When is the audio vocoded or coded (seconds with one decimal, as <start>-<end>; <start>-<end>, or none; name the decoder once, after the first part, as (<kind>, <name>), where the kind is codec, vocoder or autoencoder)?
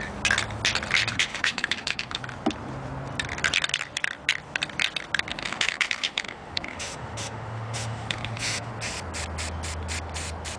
1.1-2.2 (autoencoder, DAC-VAE); 5.3-8.7